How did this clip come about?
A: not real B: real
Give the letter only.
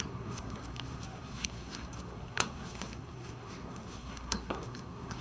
A